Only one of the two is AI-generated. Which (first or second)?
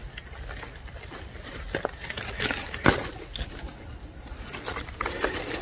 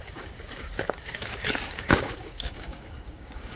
second